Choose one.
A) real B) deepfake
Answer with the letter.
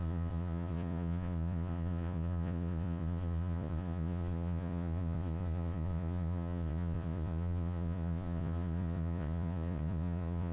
B